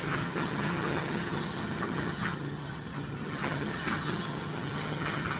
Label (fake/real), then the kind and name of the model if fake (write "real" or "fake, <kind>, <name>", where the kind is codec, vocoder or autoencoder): fake, vocoder, HiFi-GAN